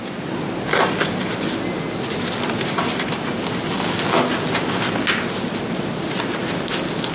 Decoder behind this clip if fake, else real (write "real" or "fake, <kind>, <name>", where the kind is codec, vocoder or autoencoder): real